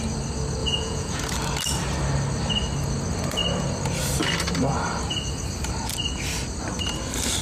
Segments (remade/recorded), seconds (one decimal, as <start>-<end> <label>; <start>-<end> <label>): 0.0-0.6 recorded; 0.6-1.2 remade; 1.2-7.4 recorded